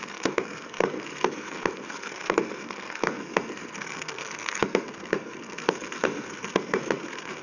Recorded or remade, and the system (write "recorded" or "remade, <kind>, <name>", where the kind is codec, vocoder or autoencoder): remade, codec, SNAC